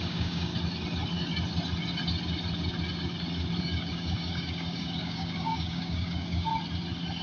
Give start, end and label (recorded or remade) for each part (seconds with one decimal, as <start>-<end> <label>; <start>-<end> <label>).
0.0-0.5 remade; 0.5-3.6 recorded; 3.6-6.5 remade; 6.5-7.2 recorded